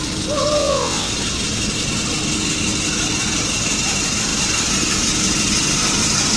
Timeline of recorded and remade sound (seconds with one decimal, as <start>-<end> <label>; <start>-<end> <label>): 0.0-0.6 recorded; 0.6-1.1 remade; 1.1-6.4 recorded